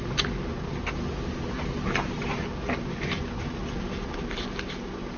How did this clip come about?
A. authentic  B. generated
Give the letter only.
A